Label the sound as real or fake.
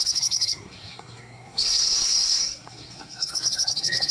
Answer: fake